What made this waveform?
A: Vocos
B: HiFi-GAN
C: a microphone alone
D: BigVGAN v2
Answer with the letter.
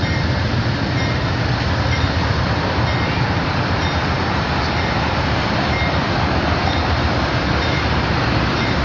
D